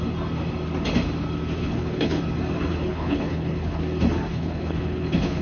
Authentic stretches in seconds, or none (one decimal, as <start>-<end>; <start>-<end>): 0.0-1.6; 2.2-2.7; 3.8-4.3